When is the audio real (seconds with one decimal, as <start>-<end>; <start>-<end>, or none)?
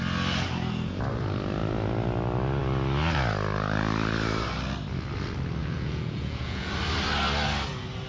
0.0-5.6; 6.7-8.1